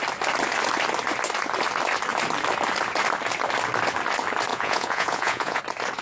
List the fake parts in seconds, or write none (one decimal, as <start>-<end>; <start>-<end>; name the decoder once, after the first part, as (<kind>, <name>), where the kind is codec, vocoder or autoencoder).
4.5-5.6 (vocoder, Vocos)